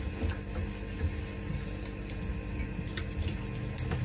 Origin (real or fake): real